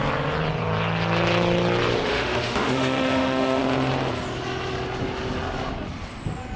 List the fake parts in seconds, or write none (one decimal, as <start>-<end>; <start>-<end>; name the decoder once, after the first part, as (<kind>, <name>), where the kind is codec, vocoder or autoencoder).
2.1-3.6 (autoencoder, DAC-VAE)